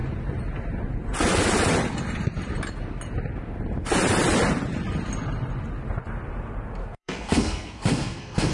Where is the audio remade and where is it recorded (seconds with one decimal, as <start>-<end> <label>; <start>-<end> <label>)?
0.0-6.8 recorded; 6.8-8.5 remade